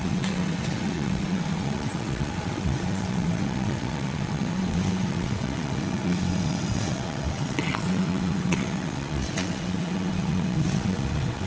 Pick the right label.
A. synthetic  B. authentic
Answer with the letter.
A